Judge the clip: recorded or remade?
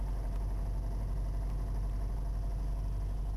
recorded